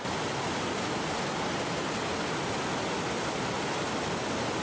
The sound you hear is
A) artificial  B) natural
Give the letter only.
B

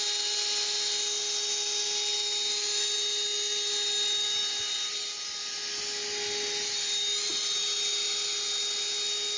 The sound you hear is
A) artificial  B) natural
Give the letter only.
B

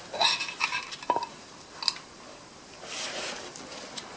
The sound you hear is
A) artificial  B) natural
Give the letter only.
B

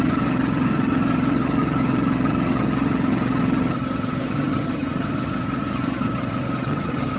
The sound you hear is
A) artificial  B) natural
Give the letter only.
A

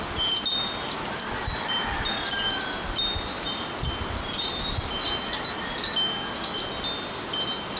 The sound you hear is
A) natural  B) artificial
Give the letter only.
A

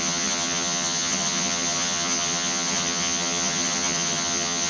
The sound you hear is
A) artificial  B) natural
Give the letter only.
A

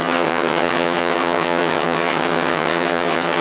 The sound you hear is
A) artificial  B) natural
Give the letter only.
A